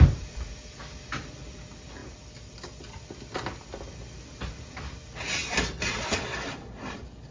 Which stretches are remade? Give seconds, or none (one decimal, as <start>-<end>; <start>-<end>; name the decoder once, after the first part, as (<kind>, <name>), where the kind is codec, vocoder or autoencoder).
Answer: none